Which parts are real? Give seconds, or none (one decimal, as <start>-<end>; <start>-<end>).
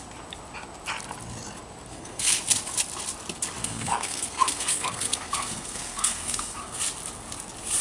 0.0-1.9; 2.4-3.6; 6.8-7.8